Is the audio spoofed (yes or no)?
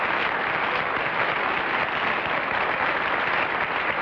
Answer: no